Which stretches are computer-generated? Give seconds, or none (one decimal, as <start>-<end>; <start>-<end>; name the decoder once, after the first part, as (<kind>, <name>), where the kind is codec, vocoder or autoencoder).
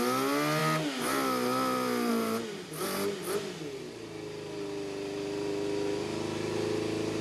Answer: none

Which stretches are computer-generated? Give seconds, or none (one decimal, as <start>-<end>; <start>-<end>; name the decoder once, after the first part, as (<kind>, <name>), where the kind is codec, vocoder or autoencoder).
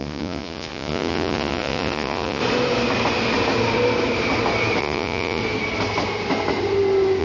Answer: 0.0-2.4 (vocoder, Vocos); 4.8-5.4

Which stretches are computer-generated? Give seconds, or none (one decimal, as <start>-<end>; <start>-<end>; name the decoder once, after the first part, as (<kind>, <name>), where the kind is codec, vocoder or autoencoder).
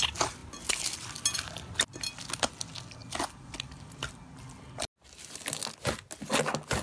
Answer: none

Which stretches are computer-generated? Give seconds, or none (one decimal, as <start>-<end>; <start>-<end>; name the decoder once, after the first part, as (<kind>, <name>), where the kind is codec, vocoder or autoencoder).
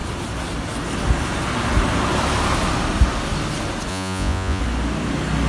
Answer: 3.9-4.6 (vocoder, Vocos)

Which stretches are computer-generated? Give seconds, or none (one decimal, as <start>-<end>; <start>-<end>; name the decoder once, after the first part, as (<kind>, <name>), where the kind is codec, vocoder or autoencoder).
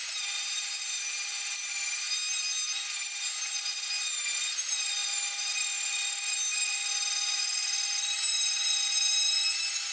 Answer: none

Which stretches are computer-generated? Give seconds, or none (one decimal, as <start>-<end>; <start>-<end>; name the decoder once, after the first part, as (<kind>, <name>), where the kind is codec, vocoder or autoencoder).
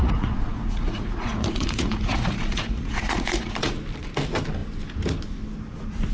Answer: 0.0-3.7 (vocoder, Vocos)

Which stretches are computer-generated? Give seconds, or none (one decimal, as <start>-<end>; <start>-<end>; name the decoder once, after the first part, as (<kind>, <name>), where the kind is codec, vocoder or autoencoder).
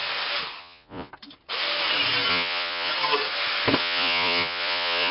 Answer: 0.6-1.1 (vocoder, Vocos); 2.3-2.9; 3.8-5.1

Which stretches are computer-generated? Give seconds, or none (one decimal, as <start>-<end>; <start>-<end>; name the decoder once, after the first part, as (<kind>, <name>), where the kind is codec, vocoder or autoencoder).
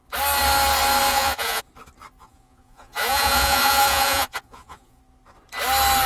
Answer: 1.1-1.6 (vocoder, Vocos); 2.2-5.0